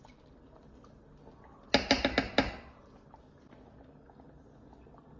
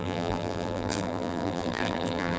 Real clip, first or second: first